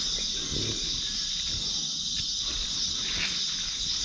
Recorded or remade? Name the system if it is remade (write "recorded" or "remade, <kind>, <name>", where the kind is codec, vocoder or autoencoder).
recorded